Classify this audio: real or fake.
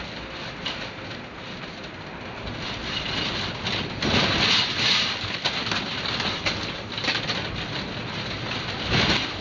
real